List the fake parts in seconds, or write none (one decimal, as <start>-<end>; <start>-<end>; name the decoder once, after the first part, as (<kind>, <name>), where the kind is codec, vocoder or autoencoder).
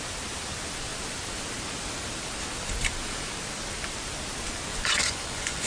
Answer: 4.7-5.7 (vocoder, Vocos)